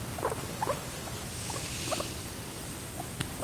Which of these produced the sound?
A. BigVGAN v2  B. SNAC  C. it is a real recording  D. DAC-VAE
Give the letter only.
C